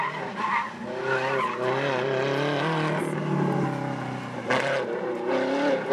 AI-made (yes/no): no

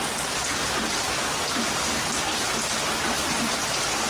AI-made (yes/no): no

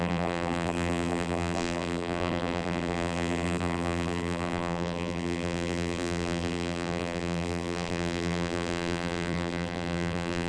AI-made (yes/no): yes